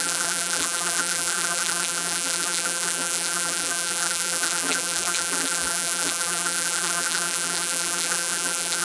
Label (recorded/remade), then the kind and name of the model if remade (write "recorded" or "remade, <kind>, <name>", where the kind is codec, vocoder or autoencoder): remade, vocoder, BigVGAN v2